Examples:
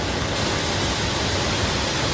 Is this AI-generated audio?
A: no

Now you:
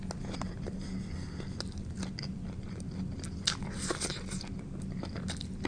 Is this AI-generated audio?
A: no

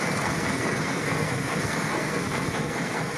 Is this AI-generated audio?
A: yes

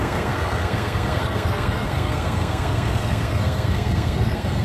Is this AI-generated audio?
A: yes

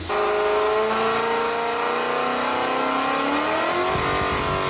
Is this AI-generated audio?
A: no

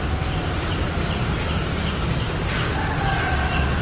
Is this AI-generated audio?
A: no